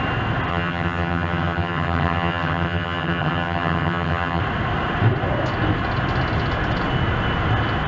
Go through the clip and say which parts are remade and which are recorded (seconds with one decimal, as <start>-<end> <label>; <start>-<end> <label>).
0.0-0.5 recorded; 0.5-4.4 remade; 4.4-7.9 recorded